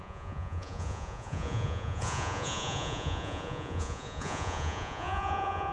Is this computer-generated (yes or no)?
yes